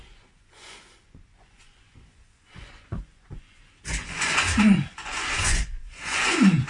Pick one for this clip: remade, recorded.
remade